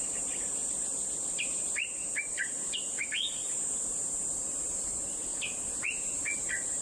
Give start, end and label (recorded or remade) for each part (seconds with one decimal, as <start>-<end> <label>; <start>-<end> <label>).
0.0-6.8 recorded